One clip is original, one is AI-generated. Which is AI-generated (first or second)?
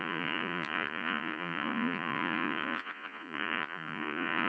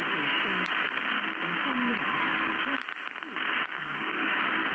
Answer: first